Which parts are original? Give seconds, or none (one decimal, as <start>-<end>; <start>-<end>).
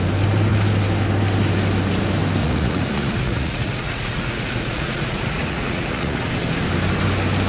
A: 0.0-2.4; 6.3-7.5